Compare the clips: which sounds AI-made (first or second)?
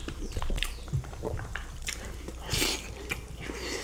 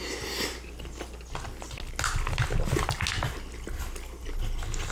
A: first